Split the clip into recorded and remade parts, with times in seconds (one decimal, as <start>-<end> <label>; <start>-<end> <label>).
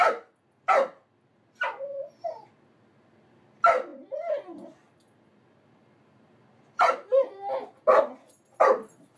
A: 0.0-9.2 recorded